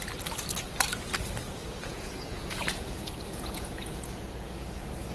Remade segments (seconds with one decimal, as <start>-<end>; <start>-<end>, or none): 1.9-5.1